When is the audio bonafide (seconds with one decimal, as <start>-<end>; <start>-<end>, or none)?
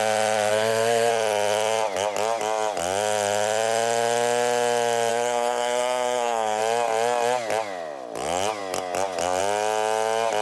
0.0-0.5; 1.1-5.1; 6.6-10.4